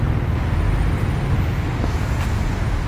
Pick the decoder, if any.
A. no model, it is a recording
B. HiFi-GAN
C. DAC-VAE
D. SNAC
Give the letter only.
A